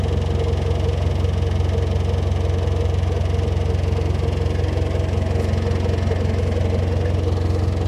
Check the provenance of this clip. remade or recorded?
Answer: recorded